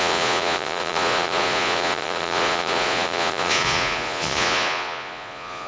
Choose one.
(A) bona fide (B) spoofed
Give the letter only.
B